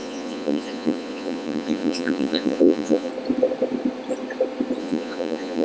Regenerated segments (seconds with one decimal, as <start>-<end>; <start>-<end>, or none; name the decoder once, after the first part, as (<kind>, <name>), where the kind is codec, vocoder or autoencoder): 0.0-3.1 (vocoder, Vocos); 4.8-5.6